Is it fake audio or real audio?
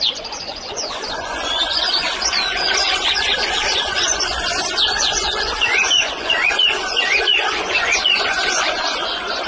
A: fake